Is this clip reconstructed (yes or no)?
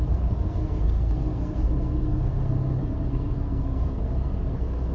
yes